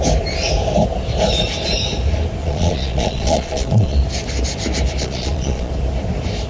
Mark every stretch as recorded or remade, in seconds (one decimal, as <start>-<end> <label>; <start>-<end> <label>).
0.0-2.4 recorded; 2.4-4.0 remade; 4.0-5.0 recorded; 5.0-5.7 remade; 5.7-6.5 recorded